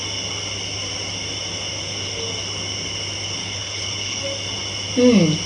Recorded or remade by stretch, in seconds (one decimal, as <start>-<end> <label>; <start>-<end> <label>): 0.0-3.4 recorded; 3.4-4.2 remade; 4.2-5.5 recorded